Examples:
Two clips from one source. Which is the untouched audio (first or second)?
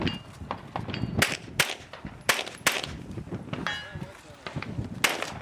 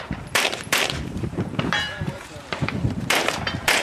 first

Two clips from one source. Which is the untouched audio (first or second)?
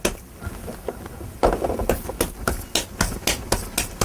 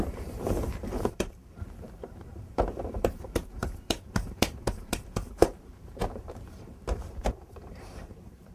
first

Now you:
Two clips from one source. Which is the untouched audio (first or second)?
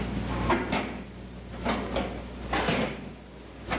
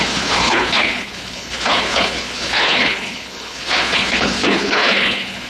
first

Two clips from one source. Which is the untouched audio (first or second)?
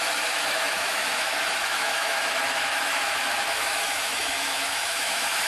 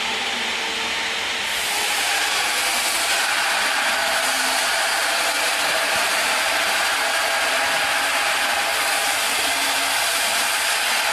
second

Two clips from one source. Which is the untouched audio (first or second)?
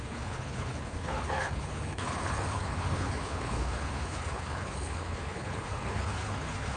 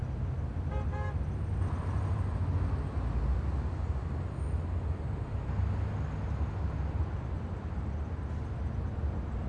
second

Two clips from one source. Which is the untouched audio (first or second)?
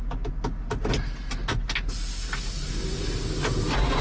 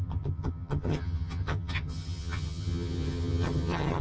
first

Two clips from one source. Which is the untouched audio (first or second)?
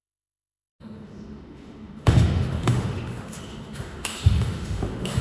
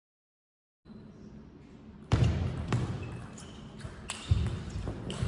second